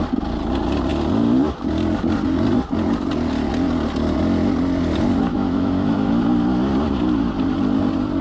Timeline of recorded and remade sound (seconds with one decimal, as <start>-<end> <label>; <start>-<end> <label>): 0.0-5.3 recorded; 5.3-6.1 remade; 6.1-8.2 recorded